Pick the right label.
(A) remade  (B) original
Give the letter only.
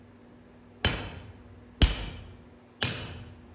B